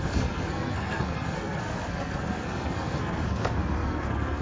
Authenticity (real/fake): fake